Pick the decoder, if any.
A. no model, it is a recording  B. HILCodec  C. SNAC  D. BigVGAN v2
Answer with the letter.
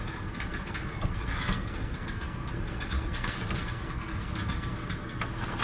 C